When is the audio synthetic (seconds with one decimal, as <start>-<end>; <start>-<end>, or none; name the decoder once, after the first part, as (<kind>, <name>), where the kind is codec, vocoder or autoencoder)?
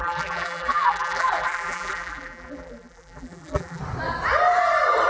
0.0-3.8 (vocoder, BigVGAN v2)